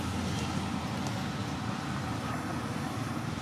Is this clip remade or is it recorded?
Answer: recorded